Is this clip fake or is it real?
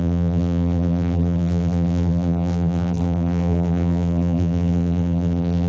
fake